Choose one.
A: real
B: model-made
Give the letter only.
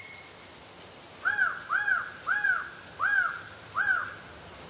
A